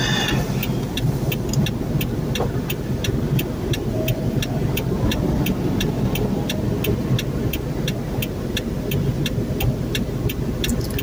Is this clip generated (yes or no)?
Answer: no